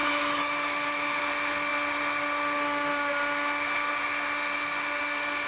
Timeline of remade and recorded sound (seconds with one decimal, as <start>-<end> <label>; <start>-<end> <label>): 0.0-1.2 remade; 1.2-5.5 recorded